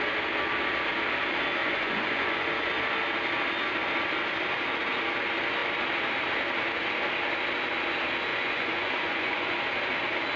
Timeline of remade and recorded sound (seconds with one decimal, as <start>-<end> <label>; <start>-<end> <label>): 0.0-1.6 recorded; 1.6-2.7 remade; 2.7-8.3 recorded; 8.3-9.6 remade; 9.6-10.4 recorded